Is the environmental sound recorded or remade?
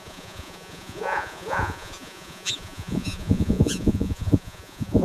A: remade